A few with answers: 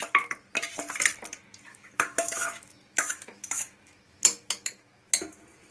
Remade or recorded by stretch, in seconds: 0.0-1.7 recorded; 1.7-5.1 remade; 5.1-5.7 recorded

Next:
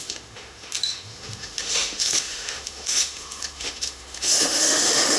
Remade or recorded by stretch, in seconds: 0.0-5.2 remade

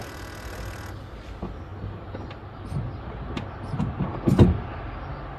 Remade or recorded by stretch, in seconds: 0.0-5.4 recorded

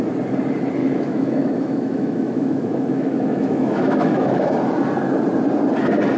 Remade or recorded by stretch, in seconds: 0.0-0.8 recorded; 0.8-4.5 remade; 4.5-6.2 recorded